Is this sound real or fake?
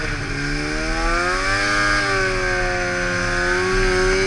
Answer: real